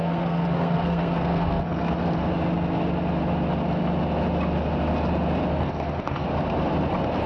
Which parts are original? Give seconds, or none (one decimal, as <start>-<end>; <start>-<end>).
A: 2.1-5.6; 6.3-7.3